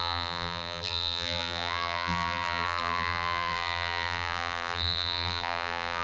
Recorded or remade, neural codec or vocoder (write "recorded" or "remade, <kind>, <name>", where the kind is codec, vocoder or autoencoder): remade, vocoder, BigVGAN v2